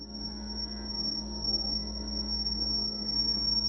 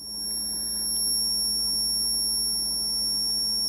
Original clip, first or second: second